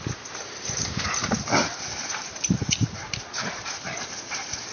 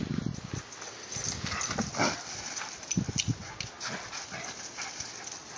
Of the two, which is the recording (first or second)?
second